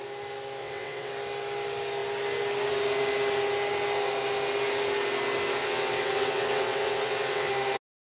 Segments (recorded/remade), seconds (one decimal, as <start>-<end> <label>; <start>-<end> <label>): 0.0-0.6 recorded; 0.6-1.1 remade; 1.1-5.6 recorded; 5.6-7.5 remade; 7.5-8.1 recorded